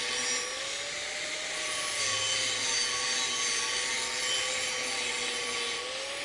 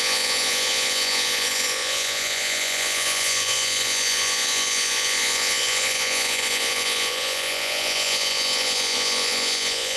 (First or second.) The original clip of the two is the first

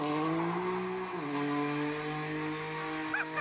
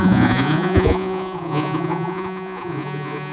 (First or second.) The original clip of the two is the first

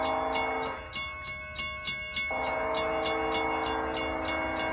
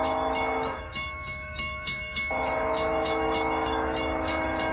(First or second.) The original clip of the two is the first